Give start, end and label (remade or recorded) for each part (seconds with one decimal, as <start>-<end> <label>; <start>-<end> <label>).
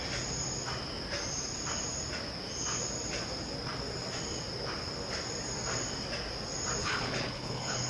0.0-6.8 recorded; 6.8-7.9 remade